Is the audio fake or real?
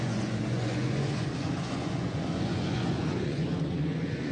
fake